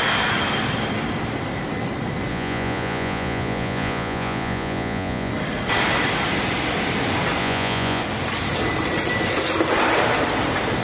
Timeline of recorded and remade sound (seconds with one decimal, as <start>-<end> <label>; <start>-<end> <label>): 0.0-2.3 recorded; 2.3-5.3 remade; 5.3-7.4 recorded; 7.4-8.0 remade; 8.0-10.8 recorded